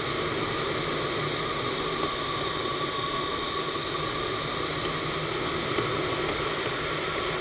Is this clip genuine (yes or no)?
yes